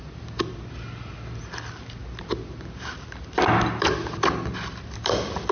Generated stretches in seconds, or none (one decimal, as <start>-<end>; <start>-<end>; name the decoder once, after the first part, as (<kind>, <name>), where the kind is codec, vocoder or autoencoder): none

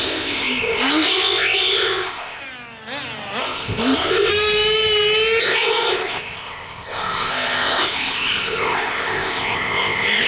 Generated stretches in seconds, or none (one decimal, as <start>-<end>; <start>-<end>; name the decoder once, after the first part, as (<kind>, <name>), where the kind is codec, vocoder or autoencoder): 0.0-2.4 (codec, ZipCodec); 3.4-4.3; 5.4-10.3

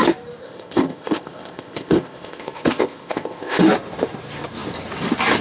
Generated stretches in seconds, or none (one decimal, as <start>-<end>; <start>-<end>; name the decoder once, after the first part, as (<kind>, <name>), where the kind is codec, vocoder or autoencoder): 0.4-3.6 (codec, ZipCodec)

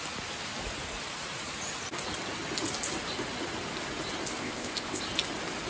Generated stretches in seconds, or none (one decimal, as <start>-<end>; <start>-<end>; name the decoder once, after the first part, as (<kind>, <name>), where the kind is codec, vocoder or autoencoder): 4.4-5.0 (codec, ZipCodec)